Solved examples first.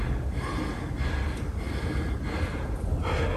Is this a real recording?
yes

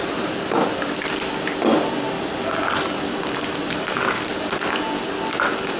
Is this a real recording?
yes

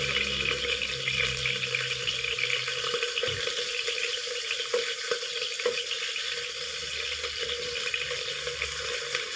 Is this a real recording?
yes